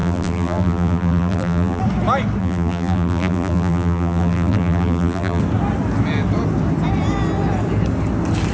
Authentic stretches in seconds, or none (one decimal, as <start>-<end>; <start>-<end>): 1.8-2.4; 5.4-8.5